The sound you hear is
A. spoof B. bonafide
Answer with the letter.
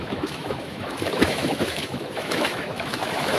A